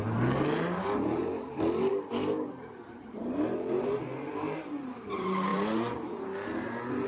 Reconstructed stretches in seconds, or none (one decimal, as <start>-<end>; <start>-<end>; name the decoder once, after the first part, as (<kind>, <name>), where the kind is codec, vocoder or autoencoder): 0.0-1.2 (vocoder, BigVGAN v2); 1.9-7.1